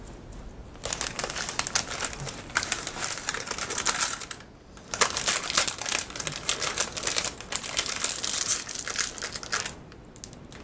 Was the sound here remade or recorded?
recorded